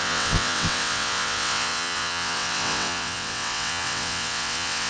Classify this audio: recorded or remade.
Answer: remade